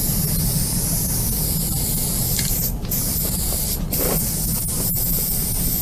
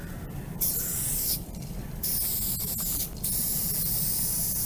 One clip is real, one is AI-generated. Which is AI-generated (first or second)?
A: second